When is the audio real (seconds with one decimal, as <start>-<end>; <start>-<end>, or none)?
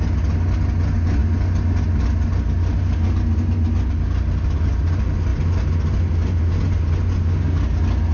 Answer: 0.0-8.1